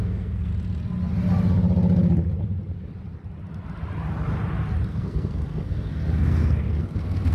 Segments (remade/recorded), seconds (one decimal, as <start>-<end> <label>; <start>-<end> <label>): 0.0-0.5 remade; 0.5-4.9 recorded; 4.9-7.3 remade